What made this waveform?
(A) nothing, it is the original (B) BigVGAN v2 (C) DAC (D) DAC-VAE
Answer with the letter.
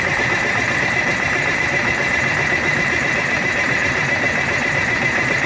B